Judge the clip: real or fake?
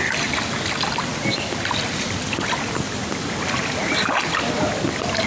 real